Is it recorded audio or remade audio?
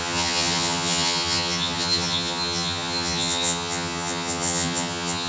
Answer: remade